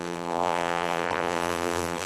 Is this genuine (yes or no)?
no